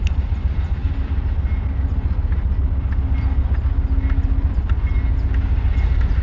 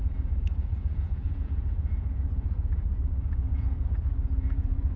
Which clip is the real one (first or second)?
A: first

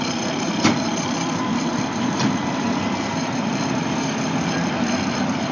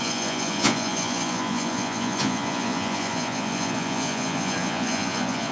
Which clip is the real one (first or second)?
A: first